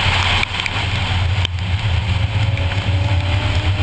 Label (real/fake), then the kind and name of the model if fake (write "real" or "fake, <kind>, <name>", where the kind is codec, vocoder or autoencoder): real